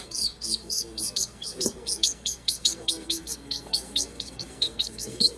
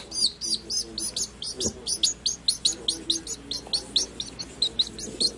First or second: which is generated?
first